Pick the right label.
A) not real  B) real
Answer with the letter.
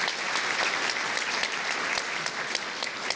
B